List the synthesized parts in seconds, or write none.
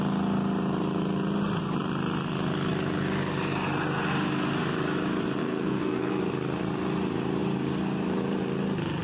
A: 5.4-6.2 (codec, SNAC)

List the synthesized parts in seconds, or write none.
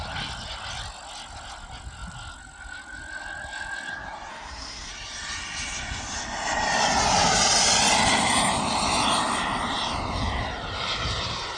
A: 4.3-4.9 (codec, SNAC)